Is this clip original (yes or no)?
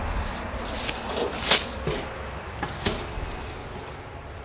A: yes